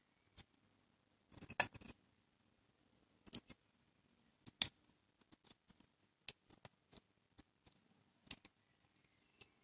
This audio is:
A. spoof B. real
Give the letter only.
B